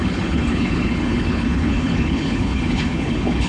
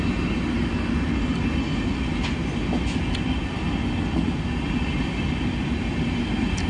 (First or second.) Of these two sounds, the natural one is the second